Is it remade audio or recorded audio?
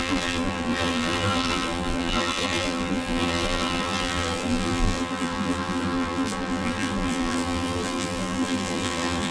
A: remade